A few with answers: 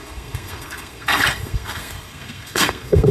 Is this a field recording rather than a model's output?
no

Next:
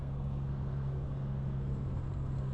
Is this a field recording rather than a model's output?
no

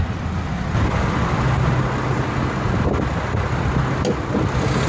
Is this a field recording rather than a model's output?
yes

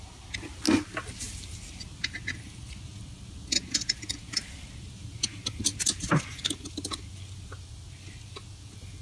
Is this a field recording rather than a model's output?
yes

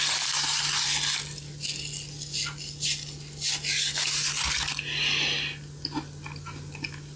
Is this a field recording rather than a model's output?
yes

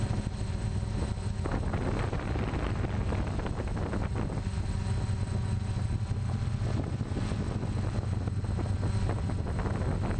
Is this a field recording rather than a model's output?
yes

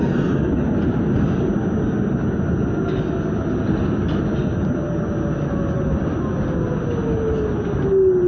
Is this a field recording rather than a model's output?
yes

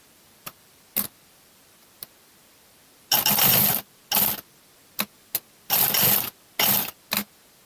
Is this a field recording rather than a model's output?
yes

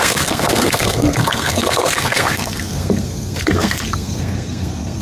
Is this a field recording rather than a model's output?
no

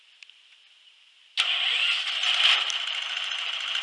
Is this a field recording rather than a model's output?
yes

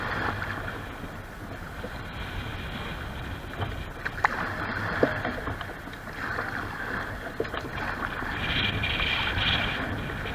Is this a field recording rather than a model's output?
yes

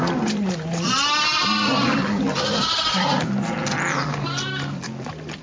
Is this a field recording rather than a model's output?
yes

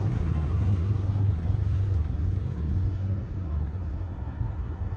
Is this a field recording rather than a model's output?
no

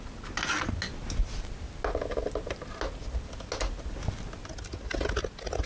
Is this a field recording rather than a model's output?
yes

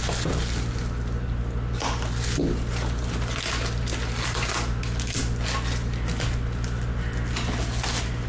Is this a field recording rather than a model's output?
yes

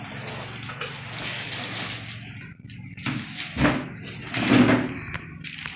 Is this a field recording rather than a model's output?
yes